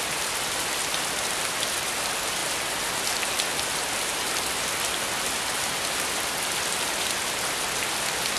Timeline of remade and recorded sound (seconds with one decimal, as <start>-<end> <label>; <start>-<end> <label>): 0.0-8.4 recorded